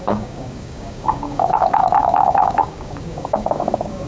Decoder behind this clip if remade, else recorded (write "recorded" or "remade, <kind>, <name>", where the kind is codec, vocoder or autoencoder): remade, codec, DAC